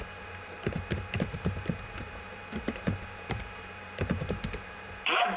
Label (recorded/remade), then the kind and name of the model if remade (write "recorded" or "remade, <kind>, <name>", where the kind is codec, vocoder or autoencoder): remade, vocoder, BigVGAN v2